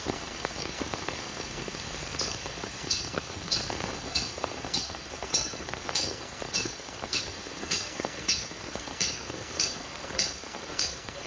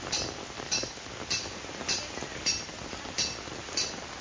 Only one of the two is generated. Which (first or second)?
first